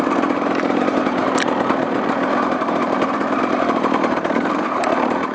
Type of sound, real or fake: fake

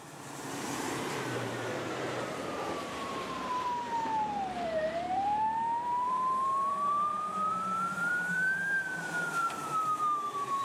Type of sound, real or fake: fake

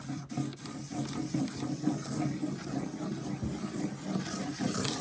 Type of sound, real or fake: real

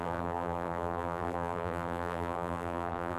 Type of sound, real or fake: fake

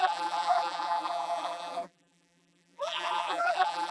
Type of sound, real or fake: fake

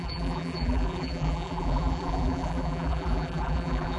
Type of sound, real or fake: fake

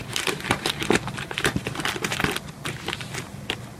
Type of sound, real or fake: real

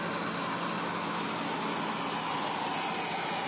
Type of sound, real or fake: real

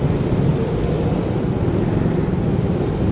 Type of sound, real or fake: real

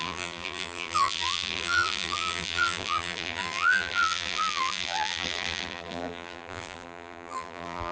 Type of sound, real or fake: fake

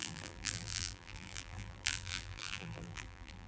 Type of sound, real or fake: fake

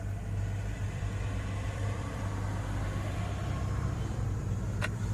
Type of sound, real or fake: fake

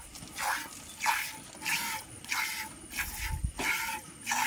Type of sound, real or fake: real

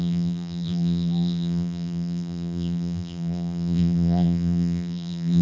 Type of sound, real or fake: fake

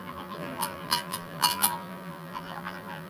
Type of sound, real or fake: fake